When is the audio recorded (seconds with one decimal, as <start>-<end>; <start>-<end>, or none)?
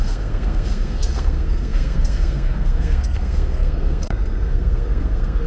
none